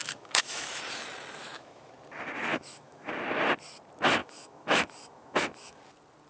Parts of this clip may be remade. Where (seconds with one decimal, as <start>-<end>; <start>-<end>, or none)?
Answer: 0.0-0.8; 1.4-1.9; 2.5-3.1; 4.2-5.8